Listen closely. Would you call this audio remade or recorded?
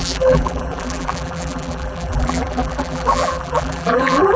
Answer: remade